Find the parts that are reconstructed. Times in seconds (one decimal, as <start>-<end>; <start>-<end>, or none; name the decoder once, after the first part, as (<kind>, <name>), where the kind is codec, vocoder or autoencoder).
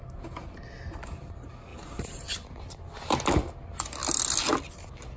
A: 1.7-2.3 (vocoder, BigVGAN v2)